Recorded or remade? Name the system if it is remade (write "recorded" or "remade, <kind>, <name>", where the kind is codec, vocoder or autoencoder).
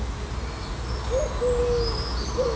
recorded